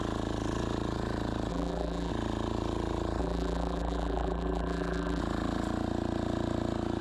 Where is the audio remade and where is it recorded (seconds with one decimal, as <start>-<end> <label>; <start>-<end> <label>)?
0.0-1.5 recorded; 1.5-2.1 remade; 2.1-3.2 recorded; 3.2-5.2 remade; 5.2-7.0 recorded